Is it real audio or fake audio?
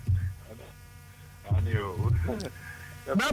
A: fake